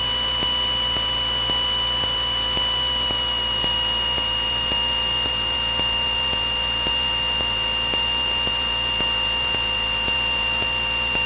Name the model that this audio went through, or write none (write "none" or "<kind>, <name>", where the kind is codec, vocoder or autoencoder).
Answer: none